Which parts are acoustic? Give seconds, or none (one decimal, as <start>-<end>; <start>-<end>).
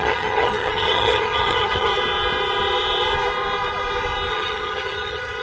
1.9-4.3